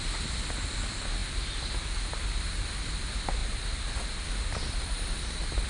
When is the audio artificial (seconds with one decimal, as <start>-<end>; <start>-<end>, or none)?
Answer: none